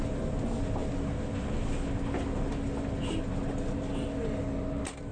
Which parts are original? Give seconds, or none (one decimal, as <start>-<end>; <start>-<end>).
0.0-5.1